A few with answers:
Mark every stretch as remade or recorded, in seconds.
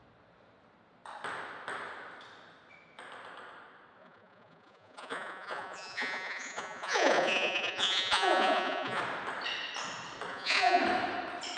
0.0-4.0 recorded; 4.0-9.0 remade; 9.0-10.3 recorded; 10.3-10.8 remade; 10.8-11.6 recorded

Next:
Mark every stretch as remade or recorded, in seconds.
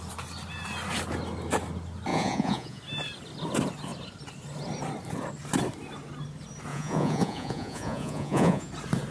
0.0-2.1 recorded; 2.1-2.8 remade; 2.8-6.7 recorded; 6.7-8.7 remade; 8.7-9.1 recorded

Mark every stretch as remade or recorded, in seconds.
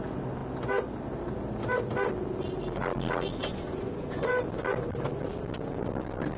0.0-3.4 recorded; 3.4-4.3 remade; 4.3-6.4 recorded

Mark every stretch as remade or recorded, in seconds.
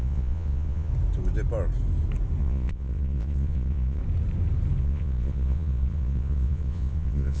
0.0-0.9 remade; 0.9-2.4 recorded; 2.4-4.0 remade; 4.0-4.8 recorded; 4.8-7.4 remade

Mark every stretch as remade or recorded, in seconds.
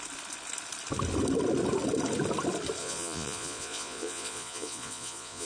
0.0-2.8 recorded; 2.8-5.5 remade